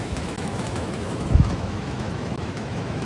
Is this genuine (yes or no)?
no